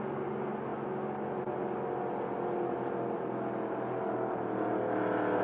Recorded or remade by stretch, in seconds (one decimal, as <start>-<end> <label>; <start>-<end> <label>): 0.0-5.4 recorded